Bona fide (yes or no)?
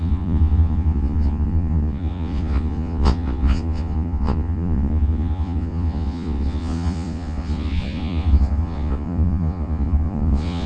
no